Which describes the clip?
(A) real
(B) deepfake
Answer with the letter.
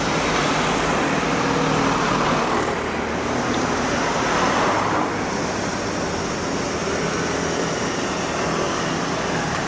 A